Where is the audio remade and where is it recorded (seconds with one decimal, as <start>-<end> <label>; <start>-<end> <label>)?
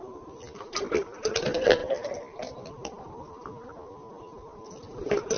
0.0-1.8 remade; 1.8-2.7 recorded; 2.7-3.5 remade; 3.5-5.4 recorded